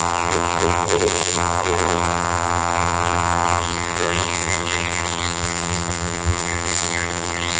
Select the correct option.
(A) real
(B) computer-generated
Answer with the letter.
B